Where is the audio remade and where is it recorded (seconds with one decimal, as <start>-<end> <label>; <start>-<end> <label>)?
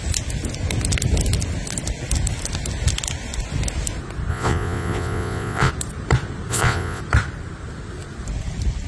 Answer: 0.0-4.3 recorded; 4.3-5.7 remade; 5.7-6.5 recorded; 6.5-7.0 remade; 7.0-8.9 recorded